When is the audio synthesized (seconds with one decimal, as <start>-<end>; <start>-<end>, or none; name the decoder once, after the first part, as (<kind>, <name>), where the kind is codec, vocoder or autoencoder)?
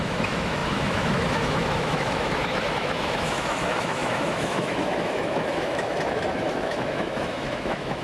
0.0-8.0 (autoencoder, DAC-VAE)